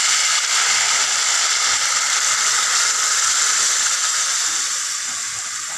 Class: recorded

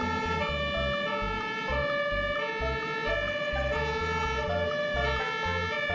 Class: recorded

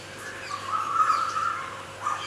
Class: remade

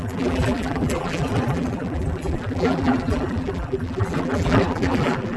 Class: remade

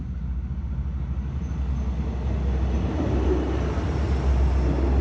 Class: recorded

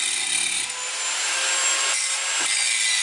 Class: recorded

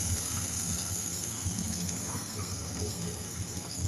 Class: remade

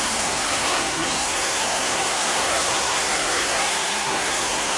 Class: remade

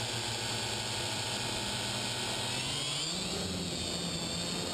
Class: recorded